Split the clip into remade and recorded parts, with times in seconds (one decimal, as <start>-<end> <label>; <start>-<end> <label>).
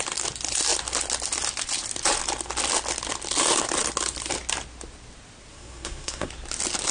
0.0-5.5 recorded; 5.5-6.3 remade; 6.3-6.9 recorded